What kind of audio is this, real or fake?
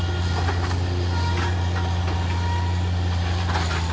real